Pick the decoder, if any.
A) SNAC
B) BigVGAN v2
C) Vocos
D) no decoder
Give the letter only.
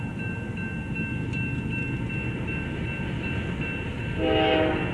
D